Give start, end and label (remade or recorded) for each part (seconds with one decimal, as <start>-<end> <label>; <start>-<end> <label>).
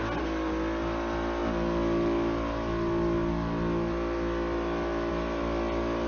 0.0-6.1 recorded